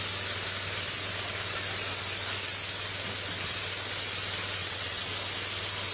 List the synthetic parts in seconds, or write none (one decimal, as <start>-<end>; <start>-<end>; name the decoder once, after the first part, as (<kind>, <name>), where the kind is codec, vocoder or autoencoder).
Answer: 4.6-5.1 (vocoder, WaveNeXt)